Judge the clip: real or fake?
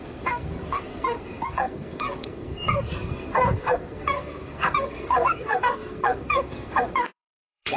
fake